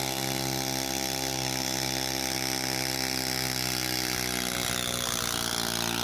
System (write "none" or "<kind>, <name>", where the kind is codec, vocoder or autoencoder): none